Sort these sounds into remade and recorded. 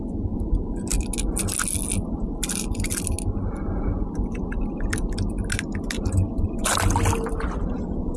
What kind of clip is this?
recorded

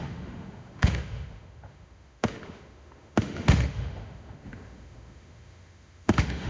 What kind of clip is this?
remade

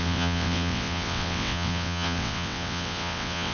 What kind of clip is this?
remade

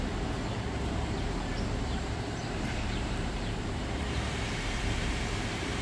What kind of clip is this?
remade